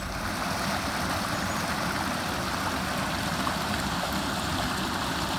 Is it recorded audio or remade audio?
recorded